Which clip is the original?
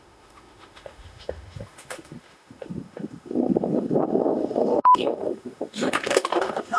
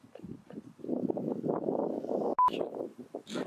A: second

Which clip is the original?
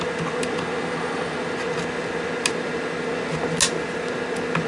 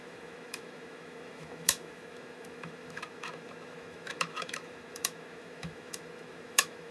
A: first